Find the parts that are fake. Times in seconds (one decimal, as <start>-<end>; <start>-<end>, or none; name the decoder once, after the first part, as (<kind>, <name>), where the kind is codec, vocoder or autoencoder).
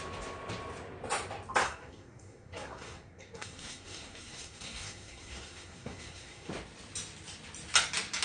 1.6-6.5 (codec, SNAC)